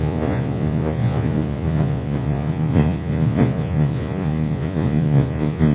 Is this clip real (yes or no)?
no